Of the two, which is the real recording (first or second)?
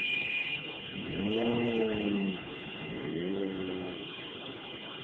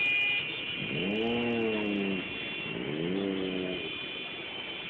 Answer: second